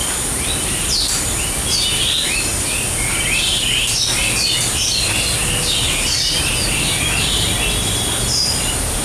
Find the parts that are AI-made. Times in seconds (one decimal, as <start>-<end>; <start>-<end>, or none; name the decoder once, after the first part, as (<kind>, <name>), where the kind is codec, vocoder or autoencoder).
none